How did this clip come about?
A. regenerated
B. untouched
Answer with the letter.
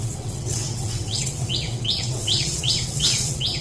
A